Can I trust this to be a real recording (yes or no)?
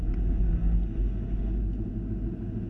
yes